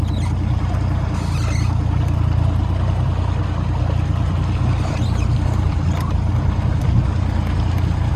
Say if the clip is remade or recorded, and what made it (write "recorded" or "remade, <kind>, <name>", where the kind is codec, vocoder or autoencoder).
recorded